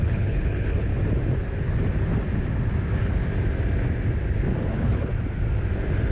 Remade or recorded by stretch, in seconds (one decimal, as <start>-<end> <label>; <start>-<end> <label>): 0.0-0.9 remade; 0.9-4.6 recorded; 4.6-5.1 remade; 5.1-6.1 recorded

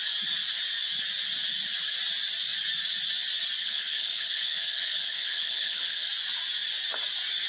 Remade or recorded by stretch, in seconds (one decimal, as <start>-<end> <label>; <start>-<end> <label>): 0.0-3.6 recorded; 3.6-6.1 remade; 6.1-7.5 recorded

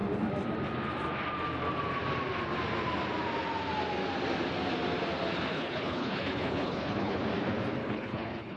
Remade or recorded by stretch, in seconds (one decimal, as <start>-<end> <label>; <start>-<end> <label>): 0.0-5.5 recorded; 5.5-7.2 remade; 7.2-7.8 recorded; 7.8-8.6 remade

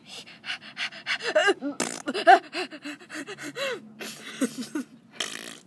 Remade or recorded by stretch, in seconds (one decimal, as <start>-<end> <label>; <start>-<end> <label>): 0.0-5.7 recorded

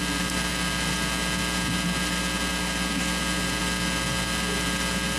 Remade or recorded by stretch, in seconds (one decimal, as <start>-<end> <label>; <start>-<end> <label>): 0.0-5.2 recorded

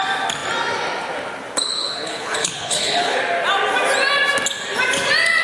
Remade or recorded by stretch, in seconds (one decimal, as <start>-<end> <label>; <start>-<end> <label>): 0.0-1.8 recorded; 1.8-3.2 remade; 3.2-5.4 recorded

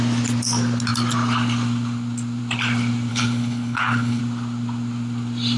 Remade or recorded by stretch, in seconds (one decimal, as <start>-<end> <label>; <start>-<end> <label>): 0.0-3.1 recorded; 3.1-4.2 remade; 4.2-5.6 recorded

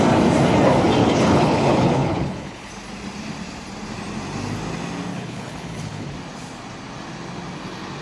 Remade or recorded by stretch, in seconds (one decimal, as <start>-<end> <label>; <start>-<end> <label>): 0.0-1.0 recorded; 1.0-2.7 remade; 2.7-5.1 recorded; 5.1-6.1 remade; 6.1-8.0 recorded